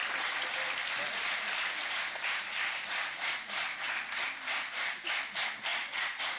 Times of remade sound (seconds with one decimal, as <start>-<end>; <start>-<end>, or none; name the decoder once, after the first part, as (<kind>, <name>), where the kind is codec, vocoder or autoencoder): 5.7-6.4 (vocoder, Vocos)